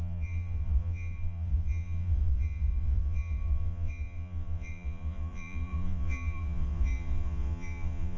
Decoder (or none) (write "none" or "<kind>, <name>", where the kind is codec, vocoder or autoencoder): vocoder, Vocos